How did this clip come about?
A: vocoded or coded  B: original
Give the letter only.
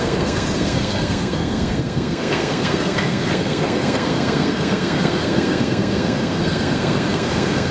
A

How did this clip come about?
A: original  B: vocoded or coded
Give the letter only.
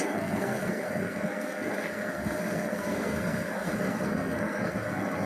B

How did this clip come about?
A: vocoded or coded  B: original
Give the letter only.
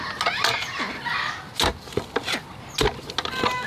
B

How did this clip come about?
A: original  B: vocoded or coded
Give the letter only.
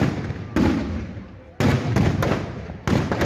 A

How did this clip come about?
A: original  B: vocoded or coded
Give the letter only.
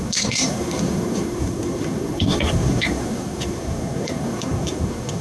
B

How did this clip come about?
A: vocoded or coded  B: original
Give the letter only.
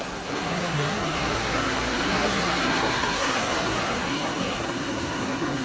A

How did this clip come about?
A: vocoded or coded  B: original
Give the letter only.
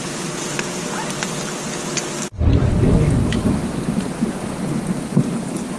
B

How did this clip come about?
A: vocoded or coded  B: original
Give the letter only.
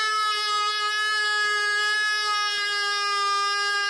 B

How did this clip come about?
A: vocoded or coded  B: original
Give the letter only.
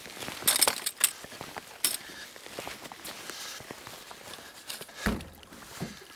B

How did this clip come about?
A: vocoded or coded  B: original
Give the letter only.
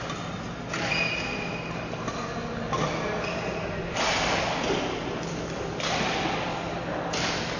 B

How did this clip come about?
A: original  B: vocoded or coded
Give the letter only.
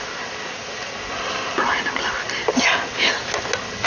A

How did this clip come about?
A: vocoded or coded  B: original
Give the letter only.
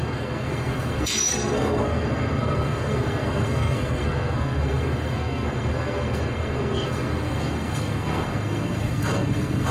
A